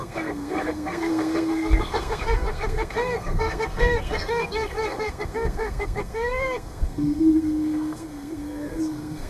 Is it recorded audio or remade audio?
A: remade